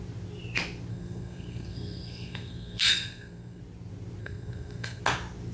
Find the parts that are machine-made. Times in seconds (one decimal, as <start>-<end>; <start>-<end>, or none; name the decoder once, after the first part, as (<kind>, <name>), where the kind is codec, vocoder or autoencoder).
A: 0.9-3.6 (codec, SNAC); 4.2-5.0